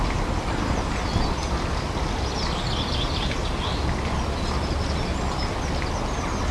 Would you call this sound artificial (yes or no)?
no